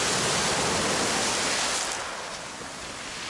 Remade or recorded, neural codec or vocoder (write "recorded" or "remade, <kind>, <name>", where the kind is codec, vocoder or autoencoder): recorded